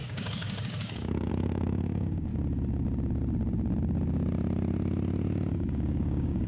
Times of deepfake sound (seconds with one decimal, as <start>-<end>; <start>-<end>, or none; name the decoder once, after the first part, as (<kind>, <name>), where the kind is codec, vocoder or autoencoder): 0.0-2.3 (codec, DAC); 5.5-6.5